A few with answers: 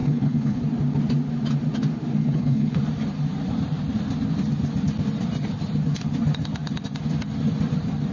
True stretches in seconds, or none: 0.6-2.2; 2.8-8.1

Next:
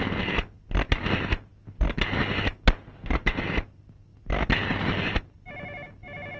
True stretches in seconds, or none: 0.0-6.4

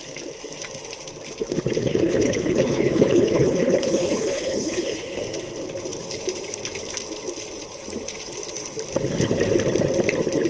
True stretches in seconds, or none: 0.0-1.8; 5.2-10.5

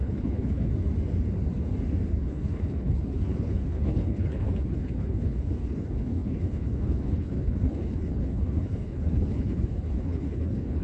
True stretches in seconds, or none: 0.7-2.2